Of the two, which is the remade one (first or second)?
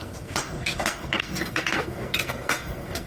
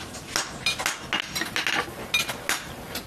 first